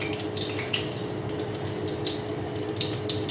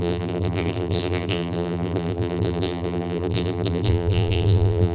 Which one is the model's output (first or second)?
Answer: second